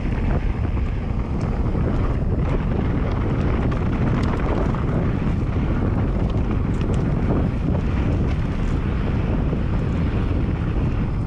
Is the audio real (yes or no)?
yes